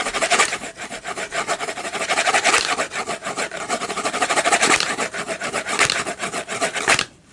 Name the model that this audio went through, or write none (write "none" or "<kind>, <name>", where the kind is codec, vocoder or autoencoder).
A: vocoder, BigVGAN v2